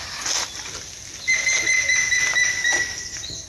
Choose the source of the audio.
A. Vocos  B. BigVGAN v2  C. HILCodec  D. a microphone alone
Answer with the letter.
D